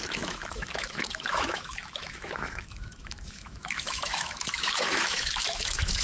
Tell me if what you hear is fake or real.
fake